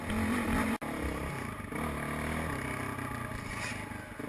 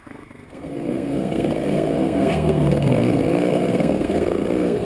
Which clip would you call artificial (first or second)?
second